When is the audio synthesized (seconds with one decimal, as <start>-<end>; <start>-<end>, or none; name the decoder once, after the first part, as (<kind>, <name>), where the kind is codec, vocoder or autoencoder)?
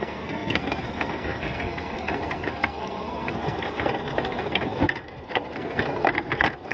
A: 0.0-6.7 (codec, SNAC)